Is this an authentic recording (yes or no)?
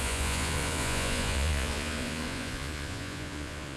no